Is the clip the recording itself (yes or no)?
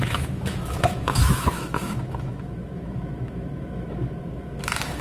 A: no